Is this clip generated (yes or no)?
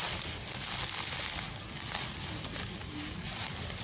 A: no